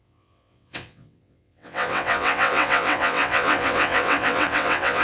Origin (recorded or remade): remade